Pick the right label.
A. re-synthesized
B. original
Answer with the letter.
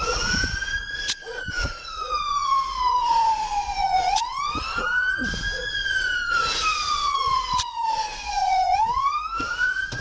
A